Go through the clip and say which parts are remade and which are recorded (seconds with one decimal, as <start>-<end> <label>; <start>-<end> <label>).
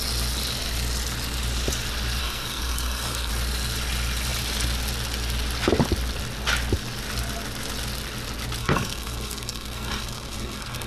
0.0-2.2 recorded; 2.2-3.3 remade; 3.3-8.6 recorded; 8.6-10.9 remade